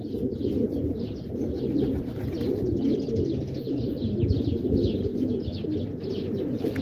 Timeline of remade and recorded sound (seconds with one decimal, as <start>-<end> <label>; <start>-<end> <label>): 0.0-6.8 recorded